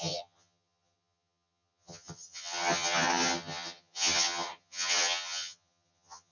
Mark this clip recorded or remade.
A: remade